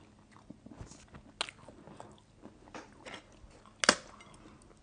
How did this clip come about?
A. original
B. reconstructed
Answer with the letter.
A